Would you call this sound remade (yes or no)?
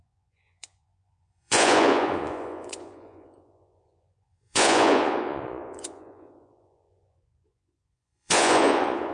yes